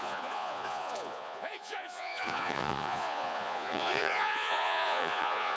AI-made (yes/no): yes